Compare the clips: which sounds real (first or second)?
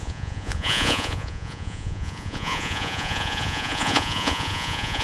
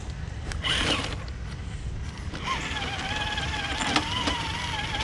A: second